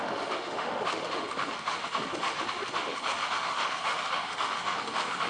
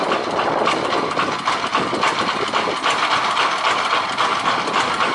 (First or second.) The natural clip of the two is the second